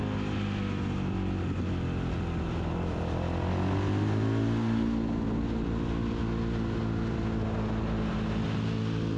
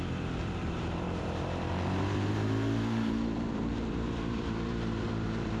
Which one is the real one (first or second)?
first